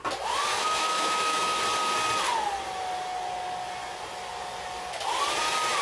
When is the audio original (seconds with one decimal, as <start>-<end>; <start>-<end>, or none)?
0.0-0.5; 1.6-5.8